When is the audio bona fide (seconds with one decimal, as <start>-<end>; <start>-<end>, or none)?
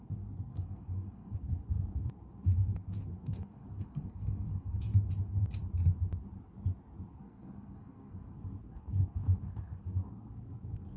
4.9-7.1